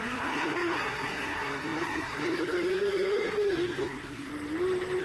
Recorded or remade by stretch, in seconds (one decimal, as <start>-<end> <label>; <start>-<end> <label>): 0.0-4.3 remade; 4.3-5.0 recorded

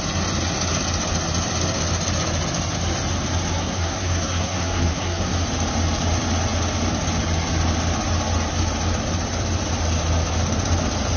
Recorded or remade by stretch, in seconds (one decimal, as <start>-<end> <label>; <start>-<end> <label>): 0.0-3.6 recorded; 3.6-5.3 remade; 5.3-11.2 recorded

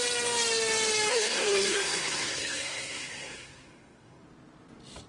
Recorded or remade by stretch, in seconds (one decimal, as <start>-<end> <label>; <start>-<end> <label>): 0.0-1.1 recorded; 1.1-4.2 remade; 4.2-5.1 recorded

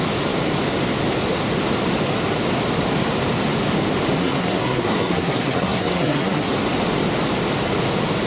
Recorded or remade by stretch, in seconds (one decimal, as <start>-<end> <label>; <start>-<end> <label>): 0.0-4.2 recorded; 4.2-6.5 remade; 6.5-8.3 recorded

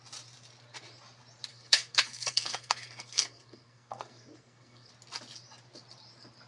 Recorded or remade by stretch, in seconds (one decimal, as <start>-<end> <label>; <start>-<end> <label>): 0.0-1.5 recorded; 1.5-4.9 remade; 4.9-6.5 recorded

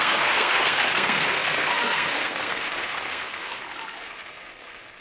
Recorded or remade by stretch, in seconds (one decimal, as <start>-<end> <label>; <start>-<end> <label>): 0.0-5.0 remade

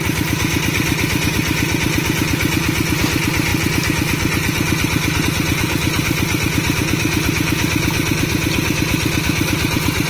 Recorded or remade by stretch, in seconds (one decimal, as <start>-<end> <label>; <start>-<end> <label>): 0.0-10.1 recorded